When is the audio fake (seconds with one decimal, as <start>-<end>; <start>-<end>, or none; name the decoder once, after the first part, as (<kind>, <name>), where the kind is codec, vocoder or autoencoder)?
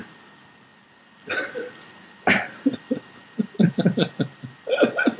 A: 0.7-3.7 (vocoder, BigVGAN v2)